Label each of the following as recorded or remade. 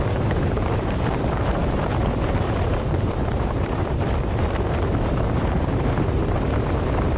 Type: remade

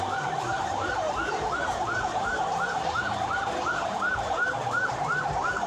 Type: remade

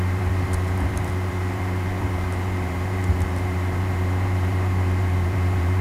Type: remade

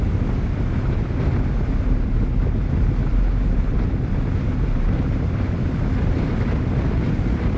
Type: recorded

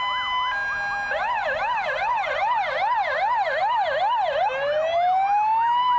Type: recorded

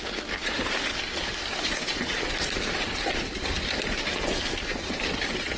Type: remade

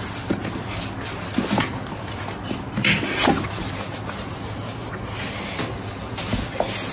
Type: recorded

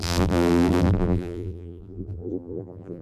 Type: remade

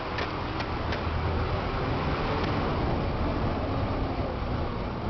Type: recorded